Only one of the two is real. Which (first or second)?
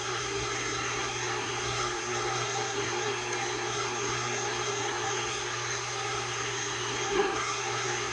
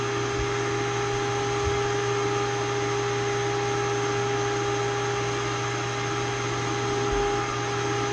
second